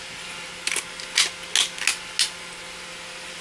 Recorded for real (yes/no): yes